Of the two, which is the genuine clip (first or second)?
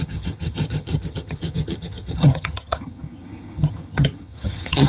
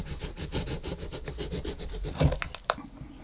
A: second